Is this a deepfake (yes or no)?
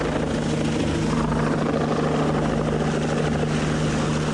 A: no